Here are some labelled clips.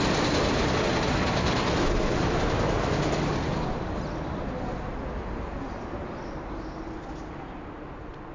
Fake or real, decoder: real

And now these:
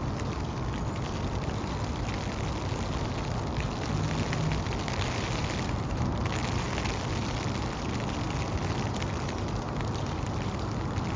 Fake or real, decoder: real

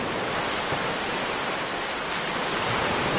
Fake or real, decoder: real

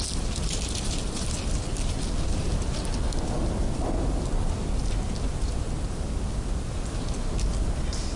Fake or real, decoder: real